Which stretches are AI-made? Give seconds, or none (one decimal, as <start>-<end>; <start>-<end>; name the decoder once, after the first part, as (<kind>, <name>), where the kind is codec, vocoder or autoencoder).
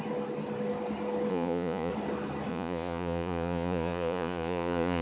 1.3-1.9 (vocoder, Vocos); 2.5-5.0